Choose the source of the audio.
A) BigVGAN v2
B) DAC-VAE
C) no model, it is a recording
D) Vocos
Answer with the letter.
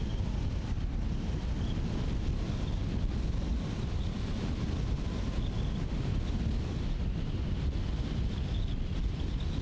C